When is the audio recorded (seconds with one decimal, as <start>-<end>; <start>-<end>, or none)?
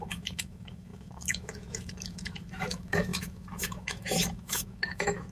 none